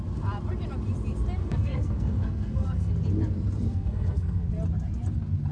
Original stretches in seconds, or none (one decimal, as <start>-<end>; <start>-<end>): 0.0-1.4; 2.9-3.7; 4.5-5.5